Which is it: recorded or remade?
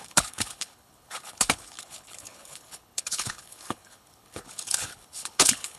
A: remade